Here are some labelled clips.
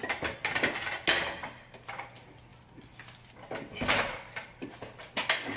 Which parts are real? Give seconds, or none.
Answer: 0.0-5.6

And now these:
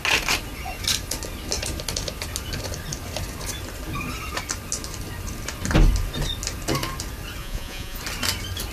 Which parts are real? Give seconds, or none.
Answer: 0.0-7.4; 8.0-8.7